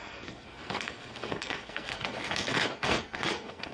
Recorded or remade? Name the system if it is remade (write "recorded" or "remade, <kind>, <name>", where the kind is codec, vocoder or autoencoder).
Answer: remade, codec, SNAC